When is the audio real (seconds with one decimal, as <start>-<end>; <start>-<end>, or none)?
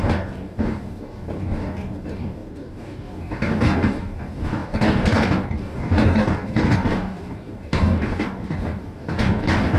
none